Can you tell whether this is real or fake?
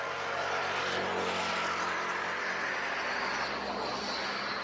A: real